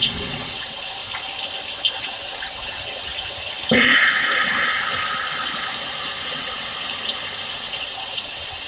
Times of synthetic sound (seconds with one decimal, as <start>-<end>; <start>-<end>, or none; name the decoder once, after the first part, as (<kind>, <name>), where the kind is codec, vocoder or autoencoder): 0.0-1.0 (vocoder, WaveNeXt); 2.0-3.1; 6.3-6.7; 7.5-8.7